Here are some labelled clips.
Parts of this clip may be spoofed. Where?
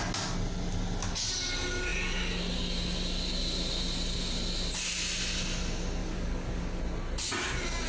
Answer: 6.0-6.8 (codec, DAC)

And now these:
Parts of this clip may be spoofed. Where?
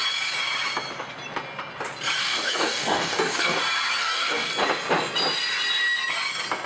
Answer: 2.2-3.6 (codec, DAC); 4.0-4.5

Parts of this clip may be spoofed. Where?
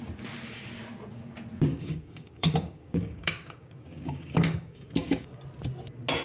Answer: 1.7-5.4 (codec, DAC)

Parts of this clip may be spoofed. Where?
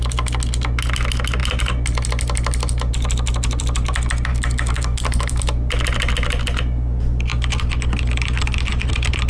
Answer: 4.3-5.4 (codec, DAC)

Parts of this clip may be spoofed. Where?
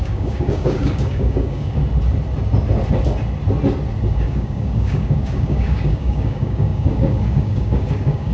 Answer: 0.0-1.8 (codec, DAC); 4.1-8.3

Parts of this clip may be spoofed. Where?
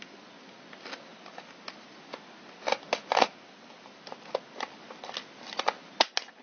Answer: none